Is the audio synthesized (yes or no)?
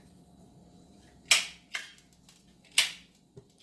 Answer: no